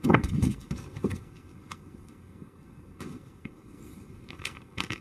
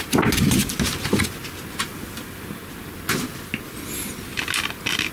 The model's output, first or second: first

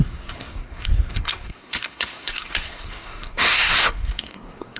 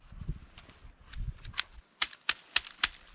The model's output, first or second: first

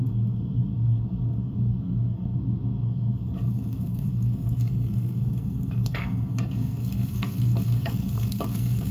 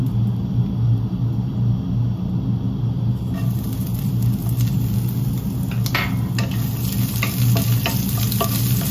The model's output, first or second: first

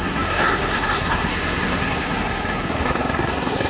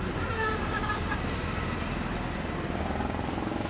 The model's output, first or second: first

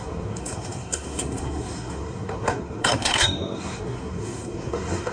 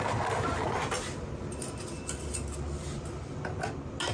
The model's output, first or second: first